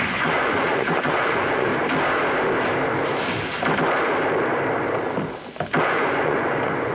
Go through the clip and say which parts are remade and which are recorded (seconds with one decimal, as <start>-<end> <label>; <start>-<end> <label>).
0.0-1.7 remade; 1.7-5.8 recorded; 5.8-6.9 remade